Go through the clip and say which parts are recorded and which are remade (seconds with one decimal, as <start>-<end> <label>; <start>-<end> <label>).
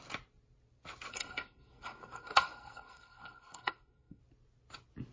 0.0-1.1 recorded; 1.1-4.2 remade; 4.2-5.1 recorded